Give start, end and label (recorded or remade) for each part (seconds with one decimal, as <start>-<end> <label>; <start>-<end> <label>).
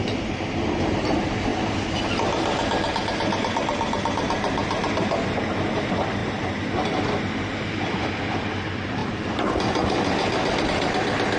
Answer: 0.0-1.5 remade; 1.5-5.8 recorded; 5.8-6.2 remade; 6.2-7.7 recorded; 7.7-11.4 remade